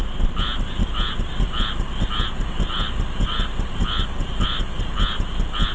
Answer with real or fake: real